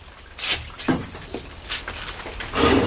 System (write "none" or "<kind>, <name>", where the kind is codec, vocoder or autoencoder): none